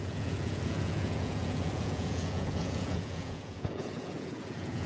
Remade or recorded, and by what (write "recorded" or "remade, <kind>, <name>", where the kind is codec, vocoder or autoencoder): remade, vocoder, Vocos